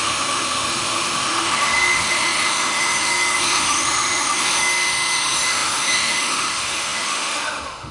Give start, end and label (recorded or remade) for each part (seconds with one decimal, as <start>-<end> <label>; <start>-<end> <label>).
0.0-7.9 remade